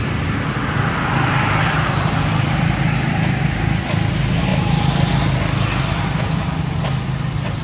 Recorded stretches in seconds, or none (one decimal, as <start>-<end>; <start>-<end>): 0.0-7.6